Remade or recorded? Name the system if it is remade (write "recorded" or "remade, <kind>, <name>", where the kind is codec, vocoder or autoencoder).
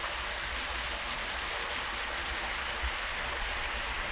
recorded